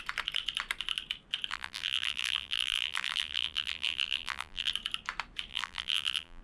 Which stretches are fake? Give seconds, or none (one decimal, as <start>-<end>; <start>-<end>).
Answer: 1.5-4.7; 5.5-6.4